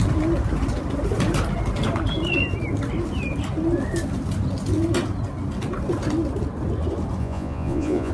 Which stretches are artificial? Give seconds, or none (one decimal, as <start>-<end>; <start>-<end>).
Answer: 7.2-8.1